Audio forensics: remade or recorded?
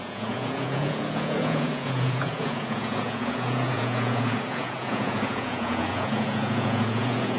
remade